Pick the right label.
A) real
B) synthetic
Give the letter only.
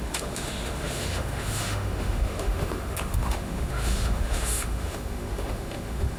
B